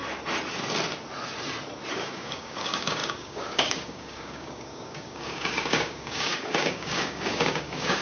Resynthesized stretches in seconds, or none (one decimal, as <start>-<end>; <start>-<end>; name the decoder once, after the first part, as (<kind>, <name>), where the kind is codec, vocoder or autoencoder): 1.9-8.0 (codec, DAC)